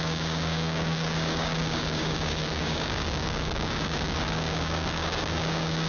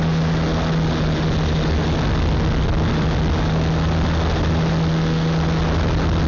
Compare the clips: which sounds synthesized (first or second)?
first